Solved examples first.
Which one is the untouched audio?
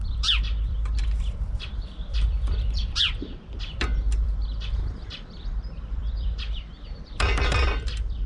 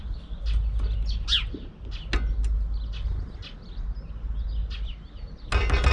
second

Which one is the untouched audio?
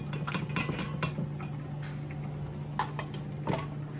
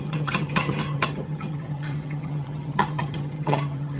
first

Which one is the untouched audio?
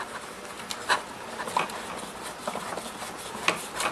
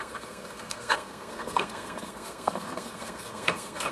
first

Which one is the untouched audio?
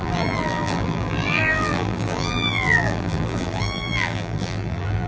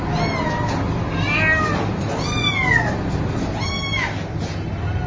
second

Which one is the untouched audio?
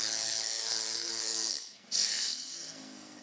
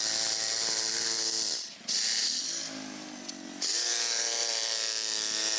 second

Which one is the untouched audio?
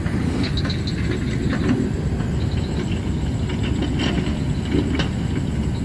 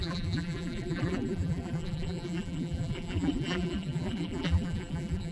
first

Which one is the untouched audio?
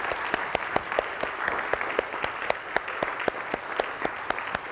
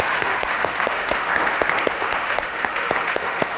first